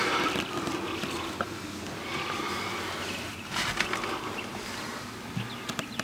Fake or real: real